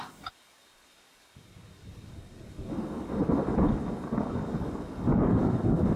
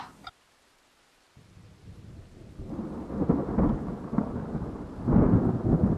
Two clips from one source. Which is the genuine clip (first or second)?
second